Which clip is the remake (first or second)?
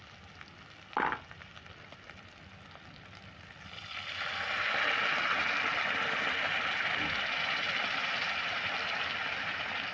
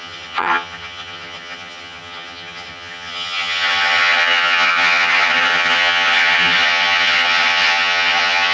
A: second